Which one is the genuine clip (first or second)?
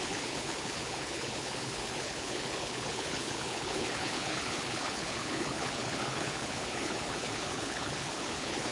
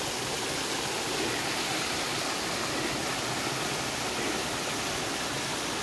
second